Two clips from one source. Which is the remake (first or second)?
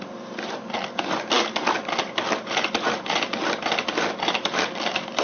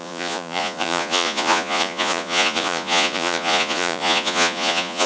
second